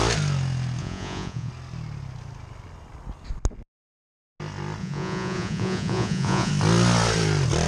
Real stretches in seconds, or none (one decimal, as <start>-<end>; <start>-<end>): 0.0-0.8; 1.5-4.8; 6.5-7.7

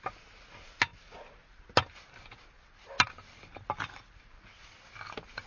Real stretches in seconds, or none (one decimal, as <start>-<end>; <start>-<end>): 0.0-5.5

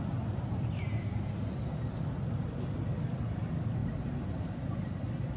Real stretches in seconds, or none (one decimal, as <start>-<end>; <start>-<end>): 0.0-5.4

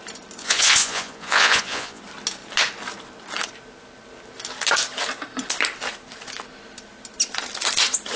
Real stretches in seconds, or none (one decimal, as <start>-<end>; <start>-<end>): 0.0-0.4; 2.0-8.2

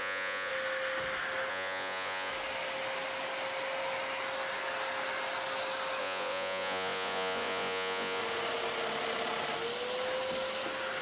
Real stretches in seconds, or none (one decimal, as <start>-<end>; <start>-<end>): 0.5-1.5; 2.3-6.0; 8.2-11.0